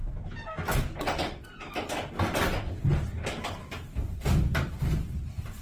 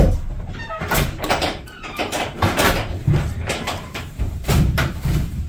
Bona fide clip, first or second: first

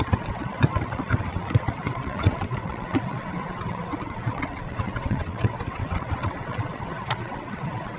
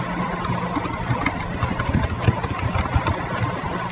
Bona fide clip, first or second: second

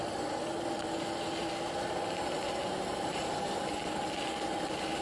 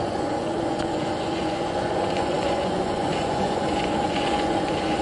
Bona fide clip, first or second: first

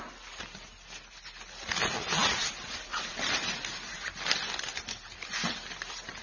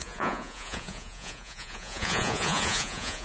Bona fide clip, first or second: first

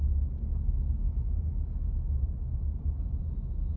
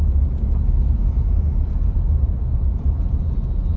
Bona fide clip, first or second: first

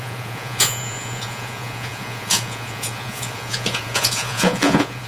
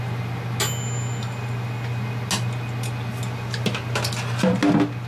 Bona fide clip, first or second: second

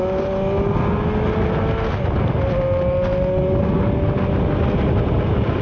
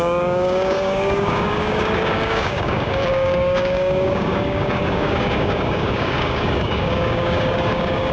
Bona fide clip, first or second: first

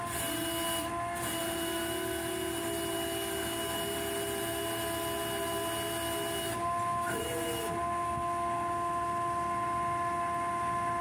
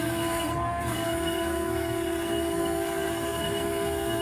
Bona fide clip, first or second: first